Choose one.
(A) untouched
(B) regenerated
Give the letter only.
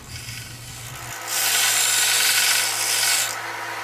A